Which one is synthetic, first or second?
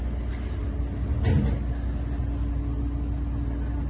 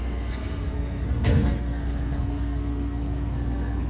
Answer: second